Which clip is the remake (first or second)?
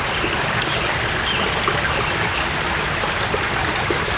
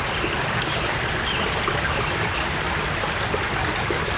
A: second